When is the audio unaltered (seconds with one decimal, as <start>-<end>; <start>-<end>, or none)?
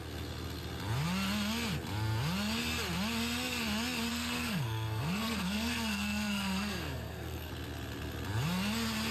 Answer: 0.0-4.1; 7.5-9.1